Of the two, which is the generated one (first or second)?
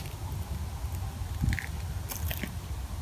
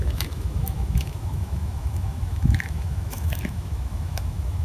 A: second